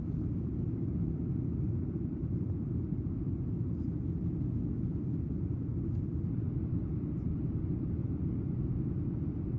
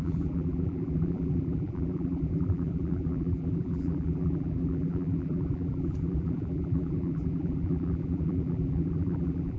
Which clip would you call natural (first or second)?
first